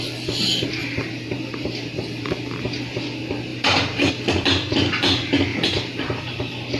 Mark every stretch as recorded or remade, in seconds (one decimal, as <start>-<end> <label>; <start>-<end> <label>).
0.0-0.8 recorded; 0.8-2.7 remade; 2.7-3.5 recorded; 3.5-4.1 remade; 4.1-5.5 recorded; 5.5-6.2 remade; 6.2-6.8 recorded

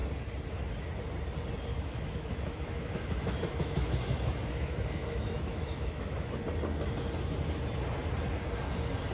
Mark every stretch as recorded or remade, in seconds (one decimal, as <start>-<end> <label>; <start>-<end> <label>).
0.0-1.7 recorded; 1.7-6.4 remade; 6.4-9.1 recorded

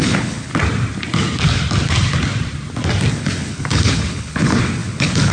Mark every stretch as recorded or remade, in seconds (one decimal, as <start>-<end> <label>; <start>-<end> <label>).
0.0-0.5 remade; 0.5-3.1 recorded; 3.1-5.3 remade

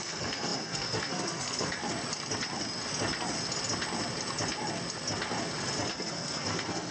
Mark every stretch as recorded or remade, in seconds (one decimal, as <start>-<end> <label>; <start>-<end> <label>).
0.0-1.8 remade; 1.8-5.9 recorded; 5.9-6.9 remade